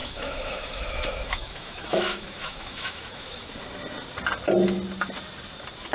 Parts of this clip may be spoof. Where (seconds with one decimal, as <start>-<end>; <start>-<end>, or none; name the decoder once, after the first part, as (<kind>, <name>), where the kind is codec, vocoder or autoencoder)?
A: 0.0-3.5 (autoencoder, DAC-VAE)